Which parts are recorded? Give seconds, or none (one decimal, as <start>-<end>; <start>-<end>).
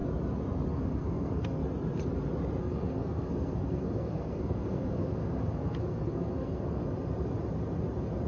0.0-0.7; 1.6-2.6; 6.8-8.3